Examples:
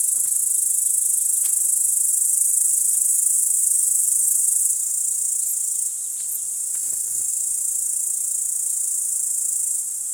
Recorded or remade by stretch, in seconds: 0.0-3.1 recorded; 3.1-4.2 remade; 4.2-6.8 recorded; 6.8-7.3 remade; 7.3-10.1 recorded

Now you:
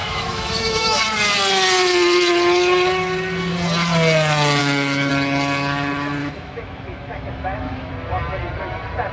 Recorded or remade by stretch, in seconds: 0.0-1.0 remade; 1.0-4.6 recorded; 4.6-5.1 remade; 5.1-6.2 recorded; 6.2-7.9 remade; 7.9-9.1 recorded

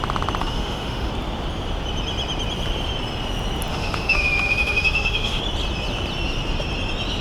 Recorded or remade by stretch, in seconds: 0.0-0.4 recorded; 0.4-1.1 remade; 1.1-3.7 recorded; 3.7-5.4 remade; 5.4-7.2 recorded

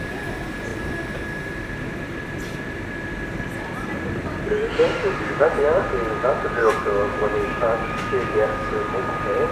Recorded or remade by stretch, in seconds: 0.0-6.6 recorded; 6.6-8.7 remade; 8.7-9.5 recorded

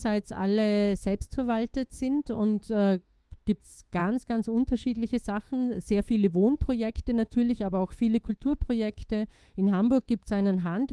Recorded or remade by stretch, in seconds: 0.0-10.9 remade

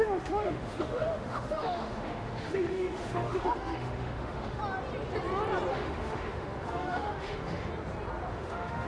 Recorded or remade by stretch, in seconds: 0.0-4.6 remade; 4.6-5.7 recorded; 5.7-7.7 remade; 7.7-8.3 recorded; 8.3-8.9 remade

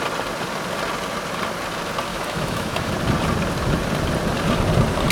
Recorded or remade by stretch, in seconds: 0.0-2.1 recorded; 2.1-2.9 remade; 2.9-5.1 recorded

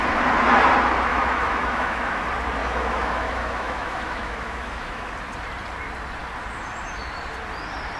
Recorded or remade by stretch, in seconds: 0.0-1.1 recorded; 1.1-2.1 remade; 2.1-2.6 recorded; 2.6-5.1 remade; 5.1-8.0 recorded